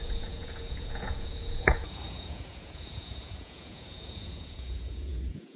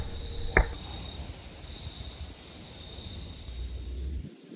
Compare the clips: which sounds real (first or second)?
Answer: second